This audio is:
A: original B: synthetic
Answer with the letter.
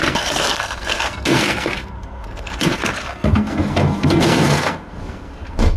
B